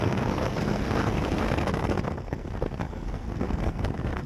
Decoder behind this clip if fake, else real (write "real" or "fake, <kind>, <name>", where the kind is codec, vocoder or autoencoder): fake, codec, SNAC